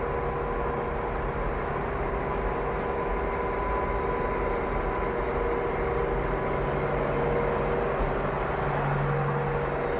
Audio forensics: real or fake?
real